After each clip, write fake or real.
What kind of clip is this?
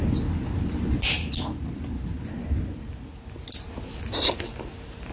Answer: real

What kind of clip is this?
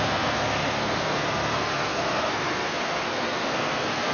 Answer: fake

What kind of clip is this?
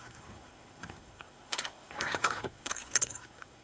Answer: fake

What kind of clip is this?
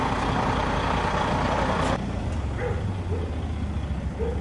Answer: real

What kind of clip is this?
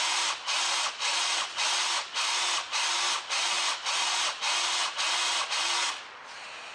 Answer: real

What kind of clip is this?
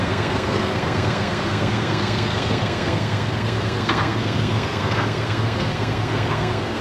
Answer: fake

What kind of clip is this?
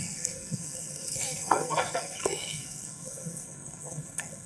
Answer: fake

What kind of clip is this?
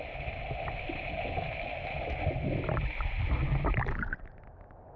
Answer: real